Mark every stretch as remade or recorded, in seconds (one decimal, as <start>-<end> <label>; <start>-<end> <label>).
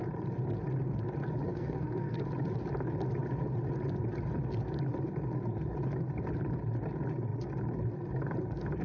0.0-1.5 recorded; 1.5-2.2 remade; 2.2-8.8 recorded